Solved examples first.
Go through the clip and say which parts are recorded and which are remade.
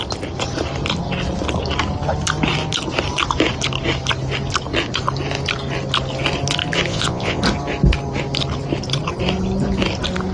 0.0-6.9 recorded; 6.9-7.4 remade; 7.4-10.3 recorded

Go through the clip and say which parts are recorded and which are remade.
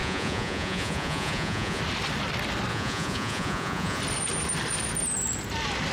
0.0-1.8 remade; 1.8-2.7 recorded; 2.7-4.0 remade; 4.0-5.9 recorded